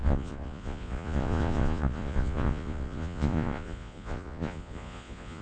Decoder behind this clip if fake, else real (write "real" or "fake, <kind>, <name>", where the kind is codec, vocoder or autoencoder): fake, vocoder, Vocos